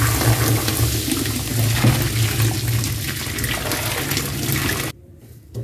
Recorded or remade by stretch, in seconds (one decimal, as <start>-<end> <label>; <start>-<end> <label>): 0.0-5.6 recorded